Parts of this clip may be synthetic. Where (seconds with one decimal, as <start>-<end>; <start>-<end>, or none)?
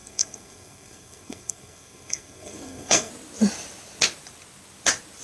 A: 0.0-3.1